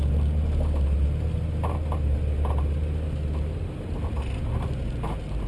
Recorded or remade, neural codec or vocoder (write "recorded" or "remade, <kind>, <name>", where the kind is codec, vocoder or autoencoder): recorded